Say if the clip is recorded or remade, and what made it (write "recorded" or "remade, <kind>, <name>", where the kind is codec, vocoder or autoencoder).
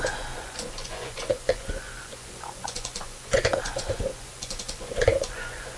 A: remade, vocoder, Vocos